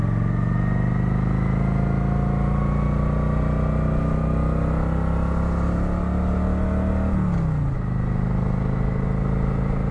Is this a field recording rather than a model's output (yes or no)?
yes